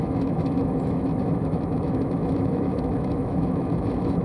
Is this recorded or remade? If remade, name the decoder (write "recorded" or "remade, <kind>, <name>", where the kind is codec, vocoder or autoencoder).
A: remade, autoencoder, DAC-VAE